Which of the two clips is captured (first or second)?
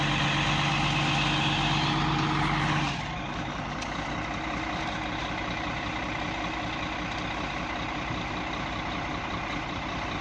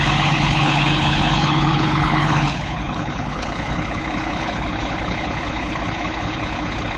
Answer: first